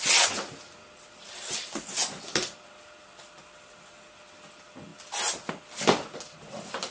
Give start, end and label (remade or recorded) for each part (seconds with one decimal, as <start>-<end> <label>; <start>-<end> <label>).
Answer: 0.0-6.9 recorded